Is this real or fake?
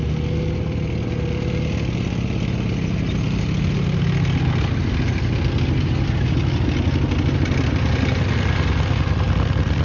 real